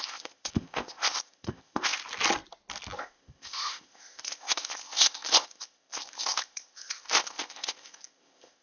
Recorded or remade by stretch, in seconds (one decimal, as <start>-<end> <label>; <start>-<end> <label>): 0.0-2.0 remade; 2.0-3.0 recorded; 3.0-8.6 remade